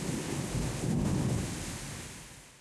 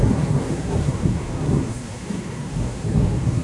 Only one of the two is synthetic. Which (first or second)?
second